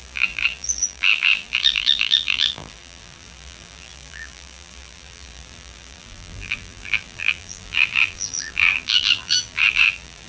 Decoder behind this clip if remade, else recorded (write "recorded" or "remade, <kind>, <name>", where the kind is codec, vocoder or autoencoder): remade, vocoder, BigVGAN v2